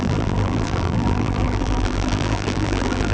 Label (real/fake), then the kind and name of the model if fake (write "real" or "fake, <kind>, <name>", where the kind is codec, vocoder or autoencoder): fake, vocoder, BigVGAN v2